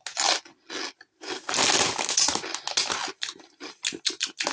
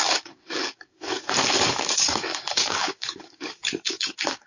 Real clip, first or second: first